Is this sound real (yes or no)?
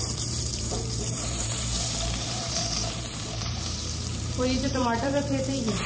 no